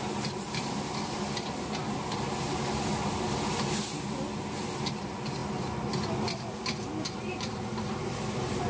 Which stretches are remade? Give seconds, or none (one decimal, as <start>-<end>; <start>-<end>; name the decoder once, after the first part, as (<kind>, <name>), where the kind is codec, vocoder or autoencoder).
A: none